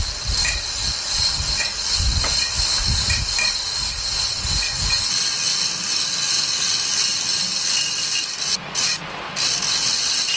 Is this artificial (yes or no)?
no